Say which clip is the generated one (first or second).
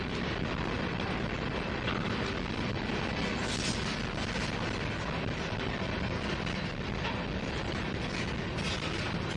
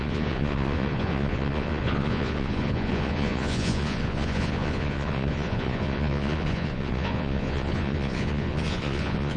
second